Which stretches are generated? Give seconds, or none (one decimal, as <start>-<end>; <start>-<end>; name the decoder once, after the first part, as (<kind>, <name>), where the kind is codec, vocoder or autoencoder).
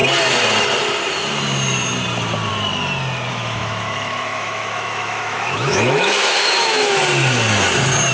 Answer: 3.3-7.0 (autoencoder, DAC-VAE)